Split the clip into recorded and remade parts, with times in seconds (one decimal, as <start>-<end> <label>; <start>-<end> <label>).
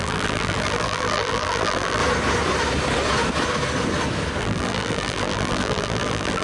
0.0-2.0 remade; 2.0-4.4 recorded; 4.4-6.4 remade